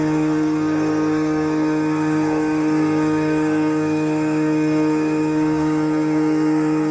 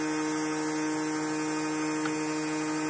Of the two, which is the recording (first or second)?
second